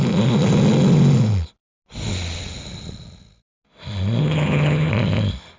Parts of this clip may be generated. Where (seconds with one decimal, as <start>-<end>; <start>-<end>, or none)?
4.2-4.9